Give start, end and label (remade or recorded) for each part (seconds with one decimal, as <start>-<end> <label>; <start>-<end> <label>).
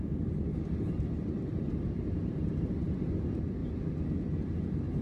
0.0-0.5 recorded; 0.5-3.1 remade; 3.1-5.0 recorded